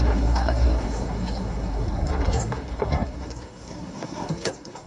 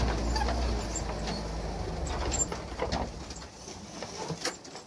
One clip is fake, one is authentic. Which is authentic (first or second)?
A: second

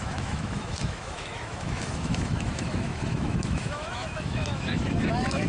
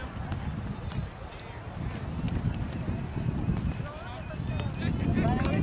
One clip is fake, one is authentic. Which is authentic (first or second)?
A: second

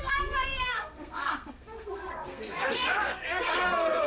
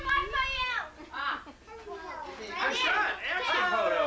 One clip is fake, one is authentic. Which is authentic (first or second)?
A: second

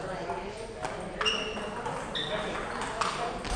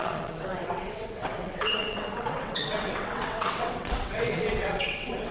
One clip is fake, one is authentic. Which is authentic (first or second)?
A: first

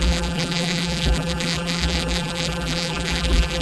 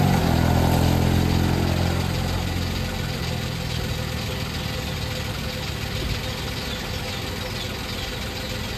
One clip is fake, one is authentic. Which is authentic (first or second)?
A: second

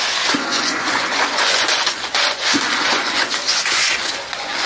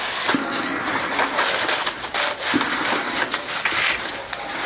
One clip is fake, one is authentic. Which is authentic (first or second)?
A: second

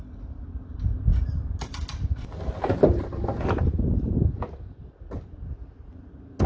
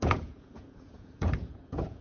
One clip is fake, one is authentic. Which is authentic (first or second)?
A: first